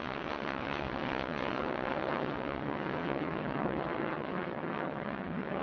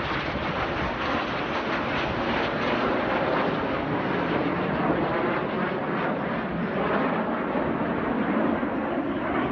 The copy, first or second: first